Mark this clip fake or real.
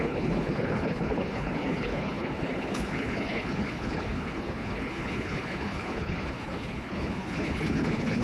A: fake